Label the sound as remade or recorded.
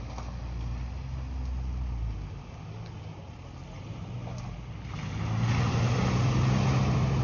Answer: recorded